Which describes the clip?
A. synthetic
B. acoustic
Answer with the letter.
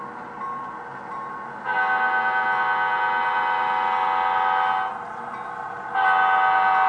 B